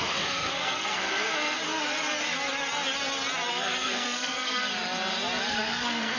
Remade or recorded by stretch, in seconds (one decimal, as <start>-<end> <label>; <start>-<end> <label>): 0.0-1.6 remade; 1.6-3.5 recorded; 3.5-4.7 remade; 4.7-5.5 recorded; 5.5-6.2 remade

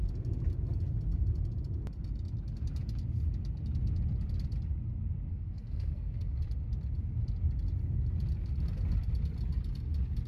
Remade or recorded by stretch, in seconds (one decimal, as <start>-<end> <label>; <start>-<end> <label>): 0.0-5.3 recorded; 5.3-6.4 remade; 6.4-10.3 recorded

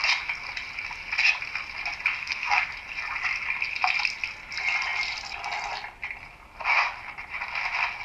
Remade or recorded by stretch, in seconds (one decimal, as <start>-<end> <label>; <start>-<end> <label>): 0.0-2.2 recorded; 2.2-2.7 remade; 2.7-8.0 recorded

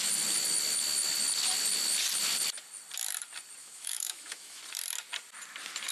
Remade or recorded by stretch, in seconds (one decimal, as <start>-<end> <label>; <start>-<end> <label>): 0.0-3.6 recorded; 3.6-4.6 remade; 4.6-5.9 recorded

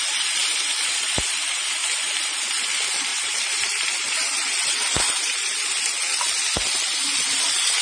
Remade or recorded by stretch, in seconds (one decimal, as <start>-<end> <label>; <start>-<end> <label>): 0.0-0.4 recorded; 0.4-1.1 remade; 1.1-1.8 recorded; 1.8-2.4 remade; 2.4-3.1 recorded; 3.1-5.8 remade; 5.8-7.8 recorded

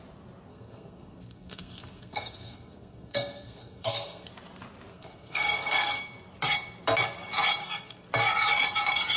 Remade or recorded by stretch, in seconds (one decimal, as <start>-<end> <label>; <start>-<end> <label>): 0.0-0.5 recorded; 0.5-4.3 remade; 4.3-4.9 recorded; 4.9-6.1 remade; 6.1-7.6 recorded; 7.6-8.1 remade; 8.1-9.2 recorded

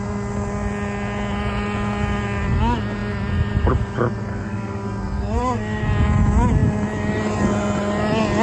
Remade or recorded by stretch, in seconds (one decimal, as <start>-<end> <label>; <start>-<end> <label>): 0.0-4.3 recorded; 4.3-5.8 remade; 5.8-8.4 recorded